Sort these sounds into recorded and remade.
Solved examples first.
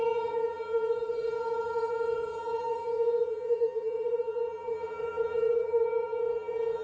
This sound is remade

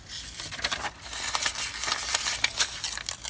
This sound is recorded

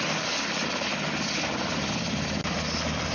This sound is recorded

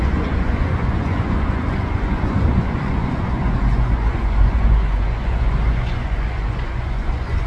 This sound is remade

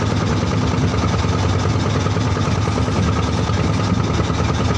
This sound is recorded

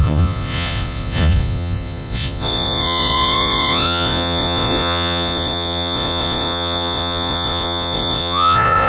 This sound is remade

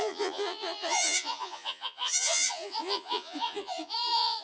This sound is remade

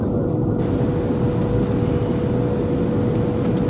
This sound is recorded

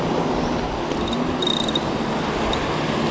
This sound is recorded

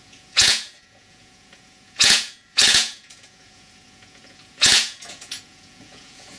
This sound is remade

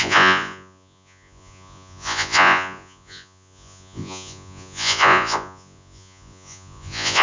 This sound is remade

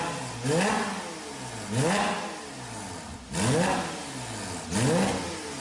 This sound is recorded